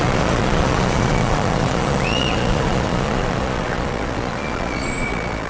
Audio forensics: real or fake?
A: fake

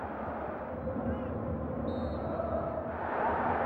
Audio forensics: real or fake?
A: real